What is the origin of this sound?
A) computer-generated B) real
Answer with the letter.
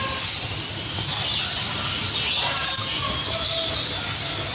B